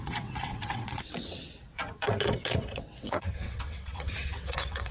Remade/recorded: remade